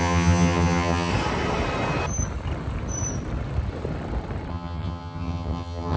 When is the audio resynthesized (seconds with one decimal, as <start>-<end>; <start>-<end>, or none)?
0.0-1.1; 4.5-6.0